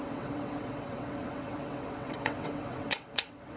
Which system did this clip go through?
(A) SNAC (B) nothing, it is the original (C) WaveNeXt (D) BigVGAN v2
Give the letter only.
C